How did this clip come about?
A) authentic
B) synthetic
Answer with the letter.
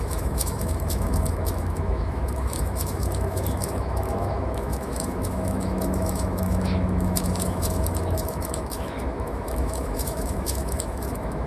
B